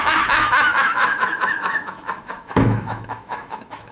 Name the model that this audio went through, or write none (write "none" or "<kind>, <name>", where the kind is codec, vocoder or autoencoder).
autoencoder, DAC-VAE